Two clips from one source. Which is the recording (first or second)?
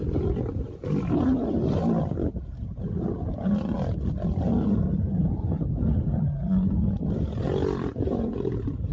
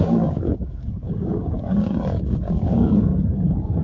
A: first